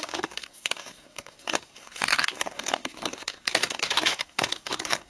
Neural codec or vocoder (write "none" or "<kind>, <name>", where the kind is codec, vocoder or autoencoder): codec, SNAC